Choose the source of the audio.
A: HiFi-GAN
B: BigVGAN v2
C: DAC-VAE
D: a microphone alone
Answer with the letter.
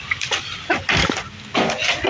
D